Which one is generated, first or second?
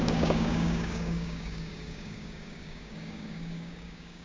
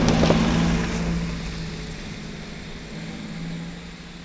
first